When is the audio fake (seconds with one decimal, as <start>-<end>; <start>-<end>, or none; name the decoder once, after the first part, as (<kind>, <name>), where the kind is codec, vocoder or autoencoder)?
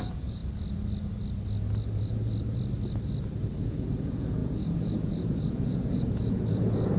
0.0-0.4 (vocoder, Vocos); 3.6-7.0